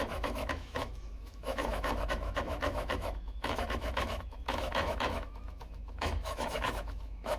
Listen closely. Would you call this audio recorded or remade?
remade